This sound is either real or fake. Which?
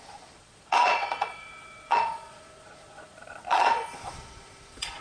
fake